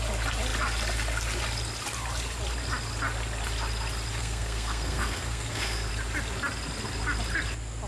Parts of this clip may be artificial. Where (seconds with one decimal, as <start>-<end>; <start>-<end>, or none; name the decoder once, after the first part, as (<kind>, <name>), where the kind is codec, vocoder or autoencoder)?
4.2-5.9 (codec, SNAC)